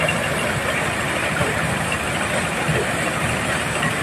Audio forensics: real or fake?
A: fake